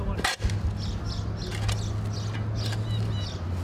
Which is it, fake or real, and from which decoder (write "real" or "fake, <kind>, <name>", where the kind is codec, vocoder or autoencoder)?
real